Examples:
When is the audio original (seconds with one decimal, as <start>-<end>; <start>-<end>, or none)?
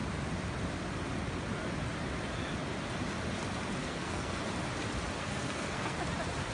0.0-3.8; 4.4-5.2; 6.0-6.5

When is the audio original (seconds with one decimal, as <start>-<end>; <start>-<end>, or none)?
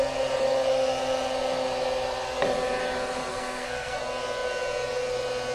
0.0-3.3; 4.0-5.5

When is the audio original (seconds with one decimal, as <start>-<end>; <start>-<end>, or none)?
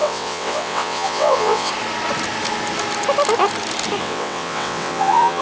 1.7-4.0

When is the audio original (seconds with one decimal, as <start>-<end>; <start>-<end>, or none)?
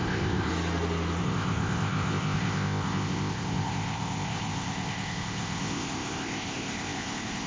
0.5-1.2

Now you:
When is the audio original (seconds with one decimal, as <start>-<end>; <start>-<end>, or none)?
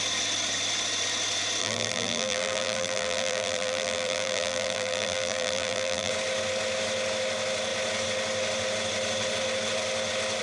0.0-1.6; 6.1-10.4